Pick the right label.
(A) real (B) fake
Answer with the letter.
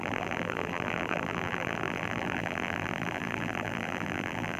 B